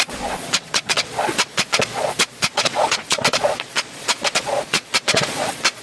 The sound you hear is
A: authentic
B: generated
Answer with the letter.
B